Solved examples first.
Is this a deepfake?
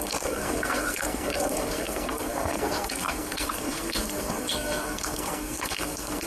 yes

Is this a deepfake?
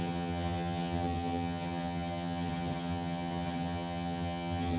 yes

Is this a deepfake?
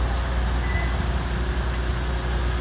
no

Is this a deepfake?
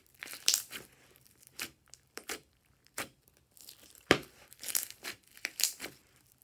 yes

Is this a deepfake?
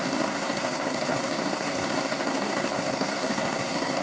yes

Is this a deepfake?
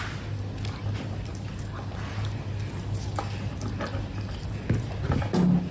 no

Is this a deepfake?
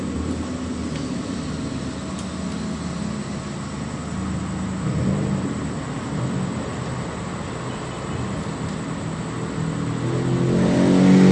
no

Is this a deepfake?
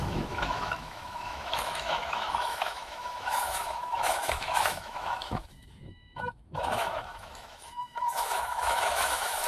yes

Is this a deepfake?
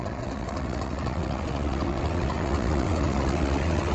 yes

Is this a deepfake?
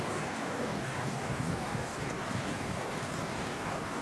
yes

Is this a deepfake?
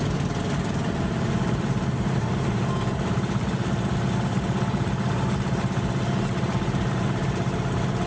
no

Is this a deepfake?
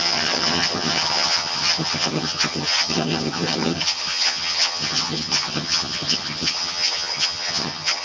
yes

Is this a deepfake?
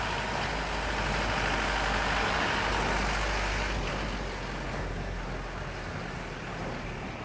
no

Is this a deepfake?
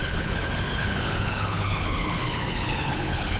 yes